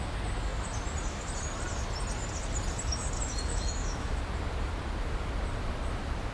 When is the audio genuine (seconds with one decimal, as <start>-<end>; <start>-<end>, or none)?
0.0-3.5; 4.2-6.3